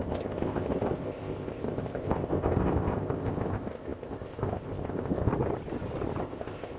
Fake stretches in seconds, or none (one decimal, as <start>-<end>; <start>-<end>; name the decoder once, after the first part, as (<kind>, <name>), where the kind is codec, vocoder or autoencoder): 0.0-5.3 (codec, ZipCodec); 6.2-6.8